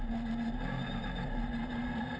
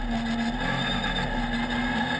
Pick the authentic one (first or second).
second